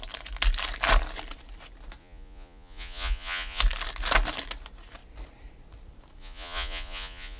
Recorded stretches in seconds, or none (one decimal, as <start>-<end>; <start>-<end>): 0.0-2.0; 3.6-6.2